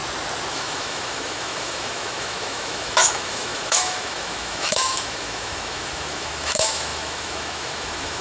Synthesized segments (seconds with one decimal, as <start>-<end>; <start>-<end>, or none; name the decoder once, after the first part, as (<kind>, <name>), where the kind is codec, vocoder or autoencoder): 0.5-8.2 (autoencoder, DAC-VAE)